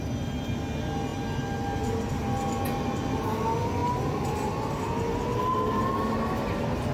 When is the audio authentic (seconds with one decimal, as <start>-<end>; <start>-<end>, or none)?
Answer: 0.0-6.9